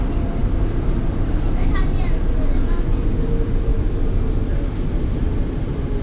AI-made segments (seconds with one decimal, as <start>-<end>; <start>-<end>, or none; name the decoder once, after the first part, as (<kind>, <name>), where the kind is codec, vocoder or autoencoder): none